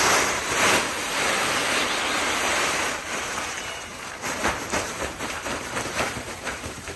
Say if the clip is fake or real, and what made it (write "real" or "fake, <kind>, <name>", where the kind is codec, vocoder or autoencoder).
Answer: fake, vocoder, BigVGAN v2